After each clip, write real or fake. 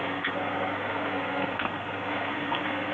fake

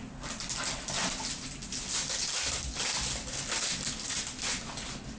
real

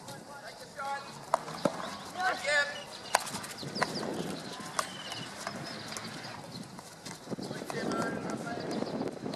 real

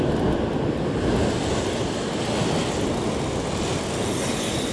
real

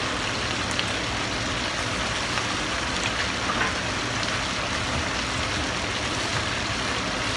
real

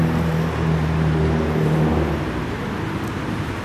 real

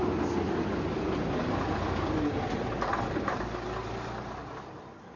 real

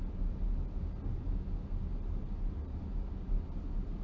real